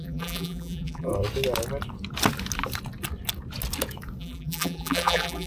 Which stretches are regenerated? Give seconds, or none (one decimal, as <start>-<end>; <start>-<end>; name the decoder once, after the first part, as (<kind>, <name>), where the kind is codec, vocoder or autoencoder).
0.0-1.1 (vocoder, BigVGAN v2); 4.2-5.5